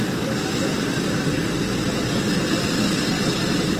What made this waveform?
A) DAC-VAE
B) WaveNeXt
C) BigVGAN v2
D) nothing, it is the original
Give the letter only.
D